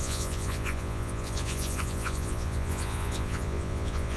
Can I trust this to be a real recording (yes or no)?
no